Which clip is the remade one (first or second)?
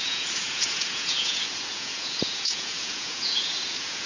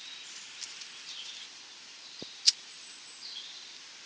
first